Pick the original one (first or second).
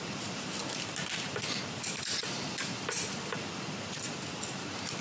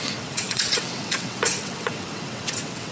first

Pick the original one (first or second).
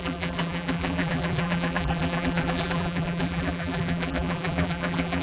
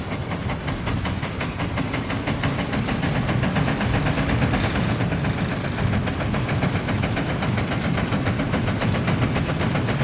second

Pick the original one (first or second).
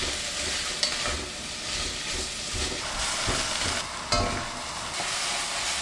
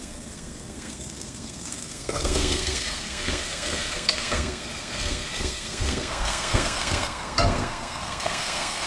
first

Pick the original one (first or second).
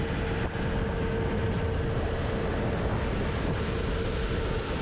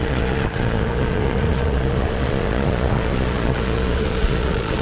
first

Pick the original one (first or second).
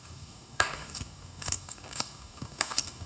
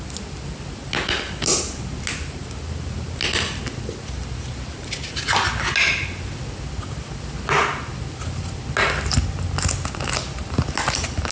second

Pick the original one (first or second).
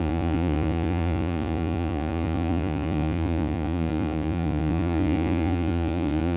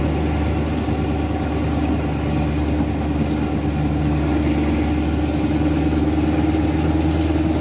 second